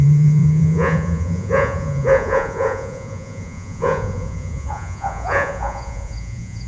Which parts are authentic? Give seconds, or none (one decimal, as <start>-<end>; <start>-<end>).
none